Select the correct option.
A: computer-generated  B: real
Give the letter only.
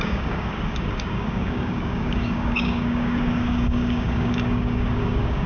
A